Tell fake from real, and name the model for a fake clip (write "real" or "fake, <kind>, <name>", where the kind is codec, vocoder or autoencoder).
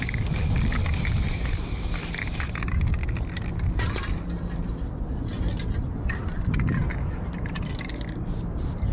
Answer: fake, vocoder, BigVGAN v2